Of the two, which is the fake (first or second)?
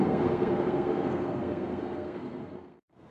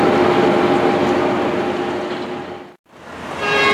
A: first